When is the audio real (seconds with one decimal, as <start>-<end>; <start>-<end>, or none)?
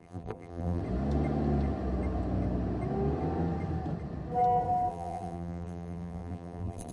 0.8-4.9